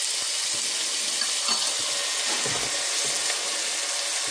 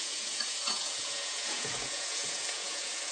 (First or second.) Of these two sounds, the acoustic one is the first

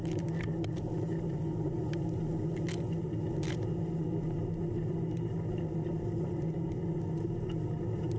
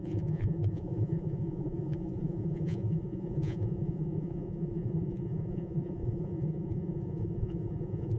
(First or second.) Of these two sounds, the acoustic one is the first